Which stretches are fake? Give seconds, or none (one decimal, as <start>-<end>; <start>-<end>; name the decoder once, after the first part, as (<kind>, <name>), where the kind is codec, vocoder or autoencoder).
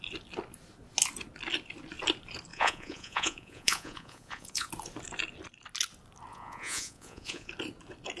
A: 2.5-4.7 (vocoder, Vocos); 6.3-7.5